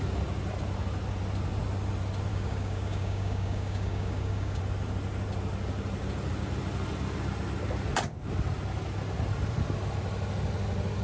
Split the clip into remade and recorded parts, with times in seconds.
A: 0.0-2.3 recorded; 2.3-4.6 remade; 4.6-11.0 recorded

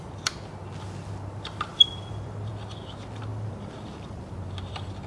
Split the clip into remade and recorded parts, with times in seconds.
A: 0.0-1.7 recorded; 1.7-2.5 remade; 2.5-3.3 recorded; 3.3-4.2 remade; 4.2-5.1 recorded

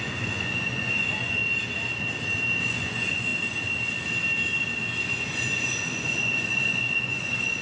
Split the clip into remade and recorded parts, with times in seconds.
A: 0.0-1.4 remade; 1.4-2.6 recorded; 2.6-3.3 remade; 3.3-5.0 recorded; 5.0-7.6 remade

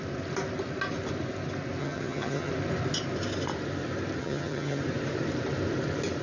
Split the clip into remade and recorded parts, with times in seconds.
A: 0.0-1.8 recorded; 1.8-2.5 remade; 2.5-4.2 recorded; 4.2-4.8 remade; 4.8-6.2 recorded

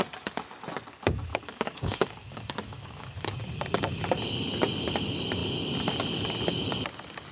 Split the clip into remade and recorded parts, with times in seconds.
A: 0.0-1.3 recorded; 1.3-3.4 remade; 3.4-7.3 recorded

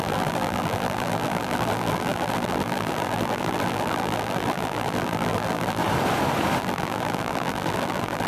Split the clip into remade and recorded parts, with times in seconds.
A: 0.0-5.8 remade; 5.8-6.6 recorded; 6.6-8.3 remade

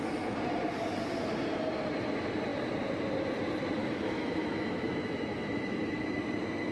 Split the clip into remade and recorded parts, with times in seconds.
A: 0.0-3.8 recorded; 3.8-6.2 remade; 6.2-6.7 recorded